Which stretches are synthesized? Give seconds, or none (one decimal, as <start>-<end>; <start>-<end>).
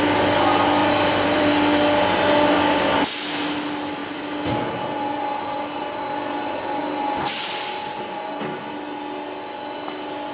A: 0.8-1.5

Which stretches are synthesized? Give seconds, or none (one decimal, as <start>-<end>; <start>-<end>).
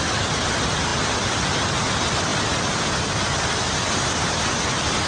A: none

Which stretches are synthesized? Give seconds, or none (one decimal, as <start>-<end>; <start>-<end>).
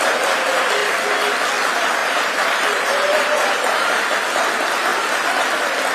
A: 2.0-4.0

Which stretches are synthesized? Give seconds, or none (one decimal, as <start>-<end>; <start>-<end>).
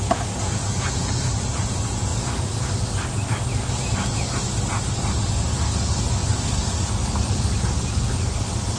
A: 1.0-1.6; 6.2-7.8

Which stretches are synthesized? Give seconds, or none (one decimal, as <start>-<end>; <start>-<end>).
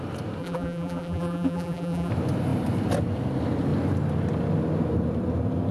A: 0.4-2.1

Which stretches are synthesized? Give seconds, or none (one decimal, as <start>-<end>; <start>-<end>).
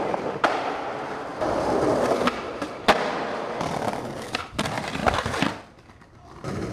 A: 0.0-6.7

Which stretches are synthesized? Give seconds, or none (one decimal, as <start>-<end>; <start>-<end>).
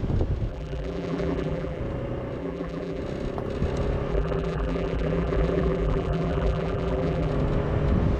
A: 0.5-1.8; 2.4-3.0; 4.1-7.3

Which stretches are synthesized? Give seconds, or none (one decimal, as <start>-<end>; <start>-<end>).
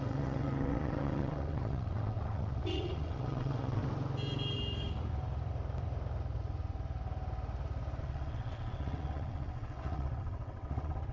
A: 0.0-3.8; 8.0-11.1